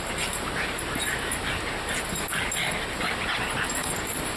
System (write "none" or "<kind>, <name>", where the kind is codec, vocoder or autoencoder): none